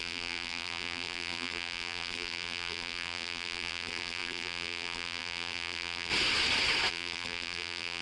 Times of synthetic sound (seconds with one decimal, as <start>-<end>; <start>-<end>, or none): 0.0-6.1; 6.9-8.0